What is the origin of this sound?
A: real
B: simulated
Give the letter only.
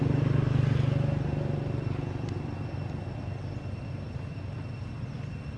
A